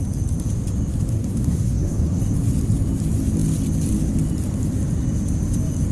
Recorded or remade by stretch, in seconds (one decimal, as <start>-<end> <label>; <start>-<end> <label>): 0.0-1.1 recorded; 1.1-2.2 remade; 2.2-5.9 recorded

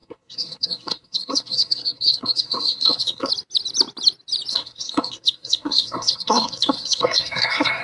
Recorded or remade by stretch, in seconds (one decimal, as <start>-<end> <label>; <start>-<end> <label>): 0.0-3.3 remade; 3.3-4.5 recorded; 4.5-7.8 remade

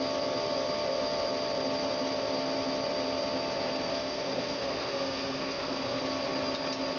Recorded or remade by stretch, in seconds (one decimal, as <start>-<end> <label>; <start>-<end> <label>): 0.0-3.9 recorded; 3.9-6.0 remade; 6.0-7.0 recorded

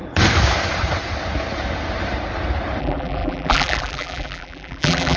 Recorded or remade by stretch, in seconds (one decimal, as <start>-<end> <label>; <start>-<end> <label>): 0.0-2.8 recorded; 2.8-5.2 remade

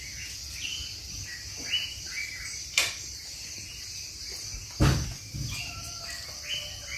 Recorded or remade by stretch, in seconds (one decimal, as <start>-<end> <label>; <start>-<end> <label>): 0.0-1.8 recorded; 1.8-4.5 remade; 4.5-7.0 recorded

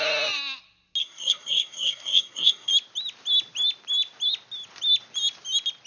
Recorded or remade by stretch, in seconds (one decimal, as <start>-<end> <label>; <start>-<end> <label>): 0.0-1.0 recorded; 1.0-2.7 remade; 2.7-5.9 recorded

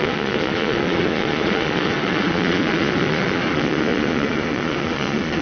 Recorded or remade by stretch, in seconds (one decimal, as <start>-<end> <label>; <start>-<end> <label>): 0.0-5.4 remade